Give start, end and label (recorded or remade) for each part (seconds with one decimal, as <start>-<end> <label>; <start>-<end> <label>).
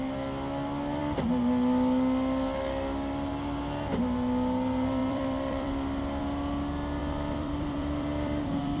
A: 0.0-5.0 recorded; 5.0-6.2 remade; 6.2-7.0 recorded; 7.0-8.8 remade